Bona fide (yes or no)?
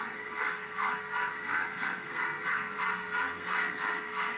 no